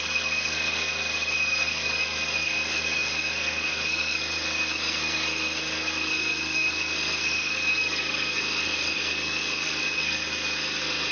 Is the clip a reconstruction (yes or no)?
yes